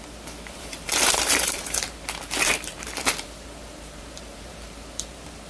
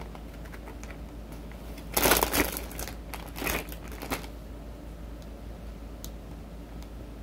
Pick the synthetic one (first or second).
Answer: first